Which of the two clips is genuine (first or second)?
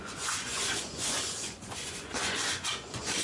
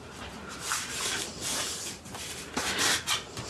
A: second